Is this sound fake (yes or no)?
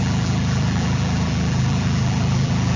yes